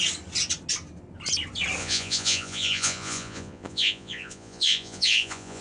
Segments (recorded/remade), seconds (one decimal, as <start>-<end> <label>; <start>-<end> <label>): 0.0-1.8 recorded; 1.8-5.6 remade